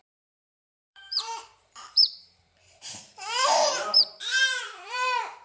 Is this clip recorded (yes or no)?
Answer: no